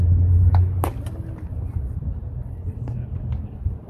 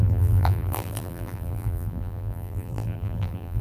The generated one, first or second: second